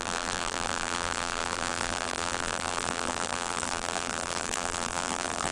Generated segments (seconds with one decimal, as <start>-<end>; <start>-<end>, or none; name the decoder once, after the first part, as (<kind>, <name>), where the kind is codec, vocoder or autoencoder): 0.0-5.5 (vocoder, BigVGAN v2)

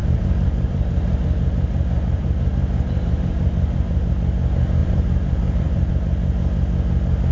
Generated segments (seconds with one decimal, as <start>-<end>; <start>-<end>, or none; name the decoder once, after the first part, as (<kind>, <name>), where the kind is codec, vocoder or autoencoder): 0.0-4.1 (vocoder, BigVGAN v2); 4.8-5.9

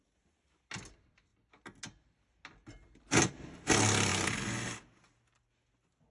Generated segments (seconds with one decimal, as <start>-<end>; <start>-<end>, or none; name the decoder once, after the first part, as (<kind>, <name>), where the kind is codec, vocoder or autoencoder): none

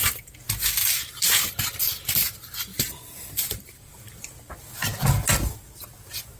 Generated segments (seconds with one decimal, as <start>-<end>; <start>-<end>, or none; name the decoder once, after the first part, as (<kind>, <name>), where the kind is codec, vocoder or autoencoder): 0.8-1.4 (vocoder, BigVGAN v2); 2.7-4.5